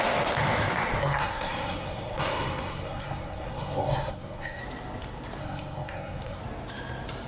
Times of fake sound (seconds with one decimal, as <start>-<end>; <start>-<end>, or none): 1.0-4.6; 5.4-6.4